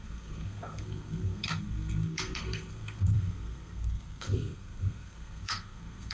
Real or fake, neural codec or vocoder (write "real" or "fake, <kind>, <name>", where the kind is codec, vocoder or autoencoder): fake, codec, SNAC